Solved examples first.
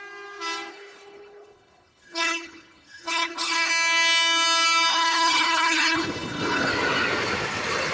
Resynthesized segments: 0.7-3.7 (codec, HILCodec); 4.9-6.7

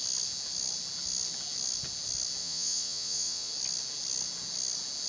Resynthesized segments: 2.4-3.5 (vocoder, Vocos)

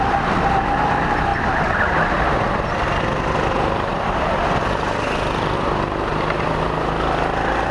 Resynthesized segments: none

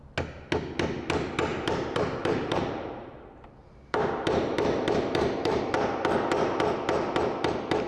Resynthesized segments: 1.5-5.6 (vocoder, BigVGAN v2)

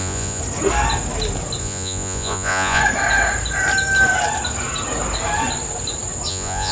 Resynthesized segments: 0.0-0.4 (vocoder, Vocos); 1.6-2.8; 6.3-6.7

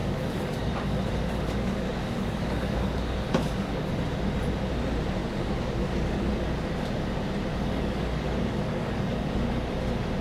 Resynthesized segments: 0.0-3.9 (codec, DAC); 5.2-6.3; 7.5-9.7

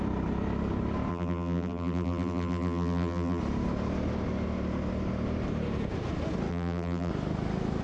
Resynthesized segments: 1.1-3.4 (vocoder, BigVGAN v2); 6.5-7.1

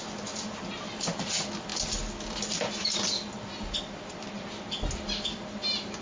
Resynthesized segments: none